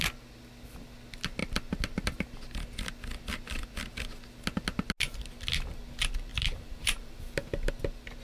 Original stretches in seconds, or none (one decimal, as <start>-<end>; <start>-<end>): 0.0-6.3; 7.7-8.2